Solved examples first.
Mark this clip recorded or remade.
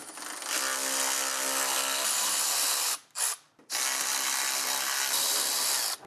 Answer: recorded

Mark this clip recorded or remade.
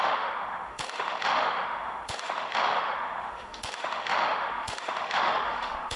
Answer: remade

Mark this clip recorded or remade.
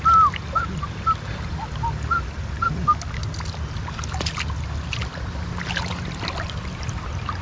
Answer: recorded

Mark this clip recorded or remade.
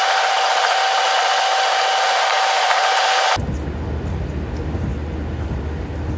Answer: recorded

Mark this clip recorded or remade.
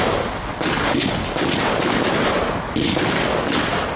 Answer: recorded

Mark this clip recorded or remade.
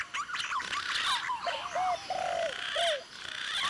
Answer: recorded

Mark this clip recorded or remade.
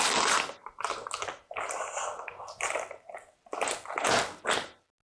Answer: recorded